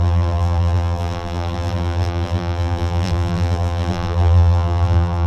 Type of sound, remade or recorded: remade